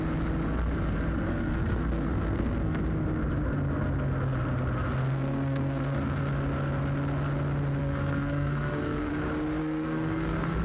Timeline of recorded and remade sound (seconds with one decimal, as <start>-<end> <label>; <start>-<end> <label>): 0.0-1.3 recorded; 1.3-2.8 remade; 2.8-5.0 recorded; 5.0-6.3 remade; 6.3-7.8 recorded; 7.8-9.1 remade; 9.1-9.6 recorded; 9.6-10.6 remade